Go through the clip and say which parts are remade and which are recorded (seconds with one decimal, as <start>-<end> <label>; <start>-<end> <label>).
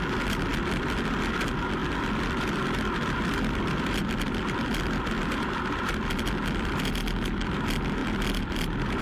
0.0-0.5 recorded; 0.5-1.4 remade; 1.4-1.8 recorded; 1.8-6.1 remade; 6.1-8.0 recorded; 8.0-9.0 remade